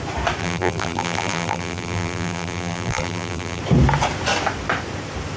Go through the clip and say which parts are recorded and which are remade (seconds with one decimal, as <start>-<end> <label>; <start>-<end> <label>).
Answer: 0.0-0.4 recorded; 0.4-3.6 remade; 3.6-5.4 recorded